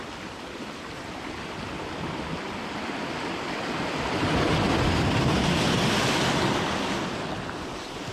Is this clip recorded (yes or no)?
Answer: yes